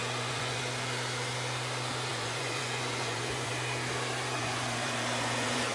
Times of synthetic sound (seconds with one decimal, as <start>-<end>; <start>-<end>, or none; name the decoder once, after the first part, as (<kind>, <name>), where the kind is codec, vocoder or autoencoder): 0.0-0.6 (vocoder, Vocos); 2.1-3.5; 4.4-5.7